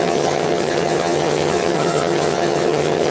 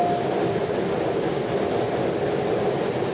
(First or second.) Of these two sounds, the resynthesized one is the first